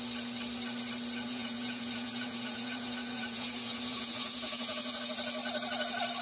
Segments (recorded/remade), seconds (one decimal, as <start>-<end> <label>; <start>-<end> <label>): 0.0-1.3 recorded; 1.3-5.0 remade; 5.0-6.2 recorded